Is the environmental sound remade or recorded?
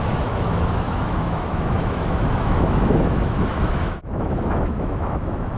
remade